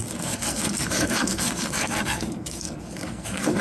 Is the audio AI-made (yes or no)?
yes